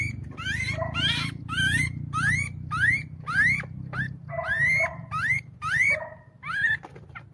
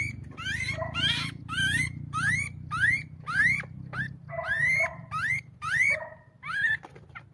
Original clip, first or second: first